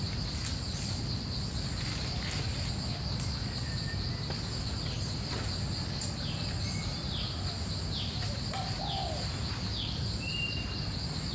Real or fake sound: real